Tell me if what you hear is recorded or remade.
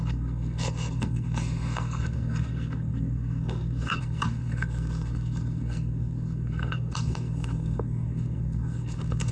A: remade